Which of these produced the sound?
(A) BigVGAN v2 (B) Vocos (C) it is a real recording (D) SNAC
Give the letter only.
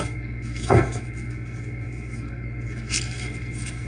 D